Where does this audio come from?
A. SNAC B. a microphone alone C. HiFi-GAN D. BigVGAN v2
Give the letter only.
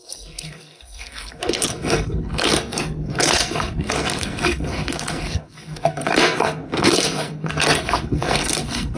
A